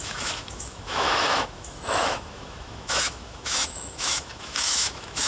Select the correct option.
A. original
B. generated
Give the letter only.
B